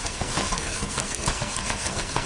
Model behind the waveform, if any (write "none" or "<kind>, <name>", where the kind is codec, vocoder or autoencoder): codec, SNAC